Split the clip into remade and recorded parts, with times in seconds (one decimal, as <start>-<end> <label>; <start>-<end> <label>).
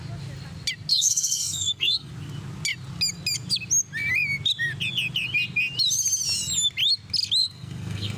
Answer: 0.0-0.9 recorded; 0.9-2.1 remade; 2.1-7.4 recorded; 7.4-8.2 remade